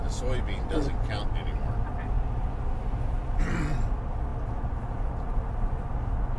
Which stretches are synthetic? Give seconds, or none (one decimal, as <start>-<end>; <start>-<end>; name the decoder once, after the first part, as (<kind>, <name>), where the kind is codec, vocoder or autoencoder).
none